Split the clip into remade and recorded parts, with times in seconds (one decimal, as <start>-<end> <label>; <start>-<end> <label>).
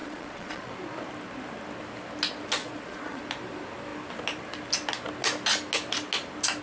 0.0-0.7 remade; 0.7-2.6 recorded; 2.6-3.2 remade; 3.2-6.6 recorded